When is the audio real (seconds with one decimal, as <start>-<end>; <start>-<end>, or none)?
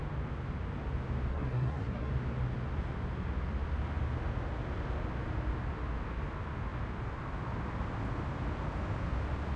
0.0-1.3; 2.1-9.6